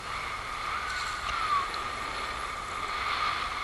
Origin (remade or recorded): recorded